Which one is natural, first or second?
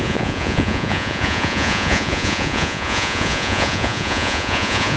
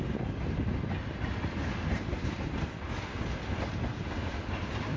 second